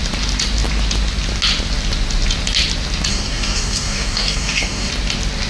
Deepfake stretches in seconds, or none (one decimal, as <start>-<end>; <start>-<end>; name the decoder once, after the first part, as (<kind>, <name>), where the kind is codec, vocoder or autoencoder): 3.1-4.9 (codec, DAC)